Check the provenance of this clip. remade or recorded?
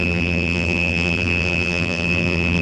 remade